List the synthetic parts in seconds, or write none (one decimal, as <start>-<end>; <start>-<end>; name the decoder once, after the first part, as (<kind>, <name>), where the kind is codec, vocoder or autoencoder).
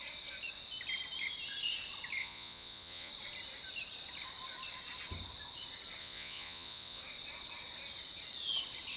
2.2-3.1 (vocoder, Vocos); 6.0-7.0